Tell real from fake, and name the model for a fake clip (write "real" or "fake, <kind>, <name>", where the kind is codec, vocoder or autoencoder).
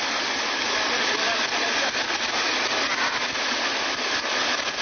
fake, vocoder, BigVGAN v2